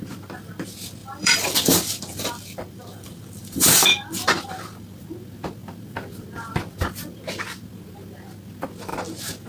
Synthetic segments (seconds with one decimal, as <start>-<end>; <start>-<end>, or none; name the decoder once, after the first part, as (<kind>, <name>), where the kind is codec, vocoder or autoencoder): 1.0-5.0 (vocoder, BigVGAN v2)